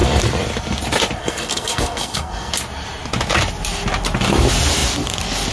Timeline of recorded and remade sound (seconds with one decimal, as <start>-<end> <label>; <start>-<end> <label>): 0.0-1.2 recorded; 1.2-2.5 remade; 2.5-5.5 recorded